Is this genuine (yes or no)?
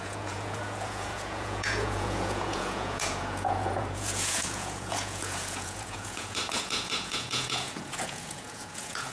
no